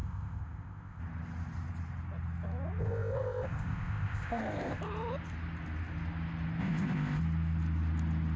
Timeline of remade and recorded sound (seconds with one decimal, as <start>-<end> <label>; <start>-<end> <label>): 0.0-1.0 remade; 1.0-2.8 recorded; 2.8-4.8 remade; 4.8-6.6 recorded; 6.6-7.2 remade; 7.2-8.4 recorded